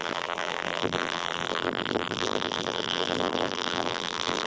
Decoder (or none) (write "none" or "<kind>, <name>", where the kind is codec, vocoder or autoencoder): vocoder, BigVGAN v2